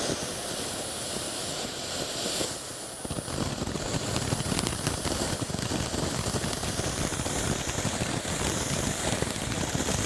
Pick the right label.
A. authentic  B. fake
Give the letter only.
A